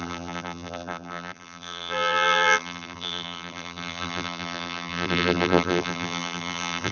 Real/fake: fake